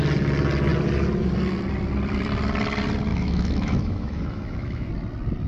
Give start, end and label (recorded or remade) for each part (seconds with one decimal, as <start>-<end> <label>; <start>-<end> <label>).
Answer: 0.0-3.1 recorded; 3.1-4.9 remade; 4.9-5.5 recorded